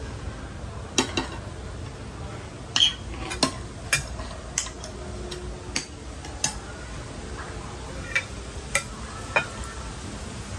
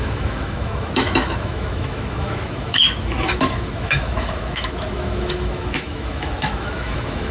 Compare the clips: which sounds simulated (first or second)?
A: second